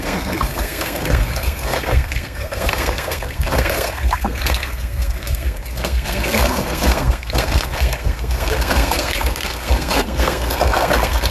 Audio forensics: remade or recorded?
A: remade